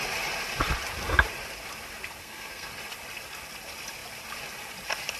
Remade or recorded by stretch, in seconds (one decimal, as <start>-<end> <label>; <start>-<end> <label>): 0.0-2.2 recorded; 2.2-2.7 remade; 2.7-5.2 recorded